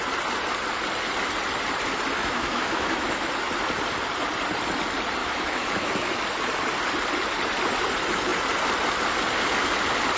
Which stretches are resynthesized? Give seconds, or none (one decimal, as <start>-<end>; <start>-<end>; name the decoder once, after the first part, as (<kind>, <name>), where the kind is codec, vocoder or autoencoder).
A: 2.2-3.3 (autoencoder, DAC-VAE); 5.2-6.1